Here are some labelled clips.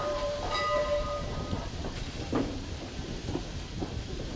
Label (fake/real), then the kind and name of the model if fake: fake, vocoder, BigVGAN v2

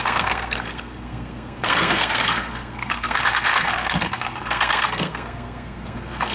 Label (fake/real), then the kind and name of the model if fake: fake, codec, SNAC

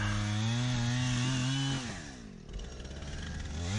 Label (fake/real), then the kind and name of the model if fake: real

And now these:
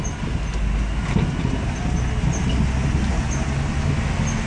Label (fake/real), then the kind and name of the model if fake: real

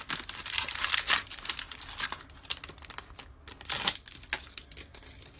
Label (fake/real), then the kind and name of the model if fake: real